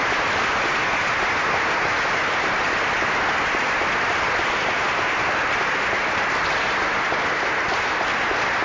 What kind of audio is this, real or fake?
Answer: real